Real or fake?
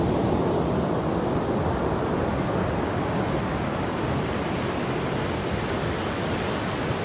real